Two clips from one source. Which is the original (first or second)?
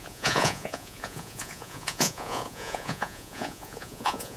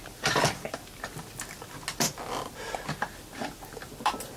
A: second